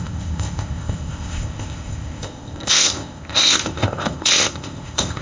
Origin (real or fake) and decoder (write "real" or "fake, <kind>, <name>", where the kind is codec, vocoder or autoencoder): fake, codec, ZipCodec